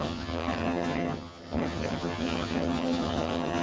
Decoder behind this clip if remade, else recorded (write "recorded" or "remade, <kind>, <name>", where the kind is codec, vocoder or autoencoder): remade, vocoder, HiFi-GAN